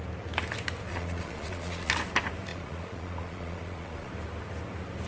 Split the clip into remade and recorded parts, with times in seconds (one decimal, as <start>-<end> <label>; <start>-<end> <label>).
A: 0.0-0.9 recorded; 0.9-1.9 remade; 1.9-2.5 recorded; 2.5-4.1 remade; 4.1-5.1 recorded